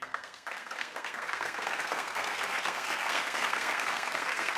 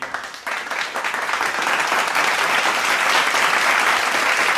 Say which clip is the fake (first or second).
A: first